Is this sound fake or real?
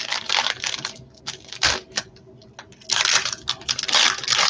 real